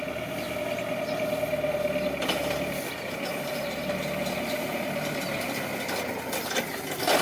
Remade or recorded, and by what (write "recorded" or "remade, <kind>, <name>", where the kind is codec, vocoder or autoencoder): recorded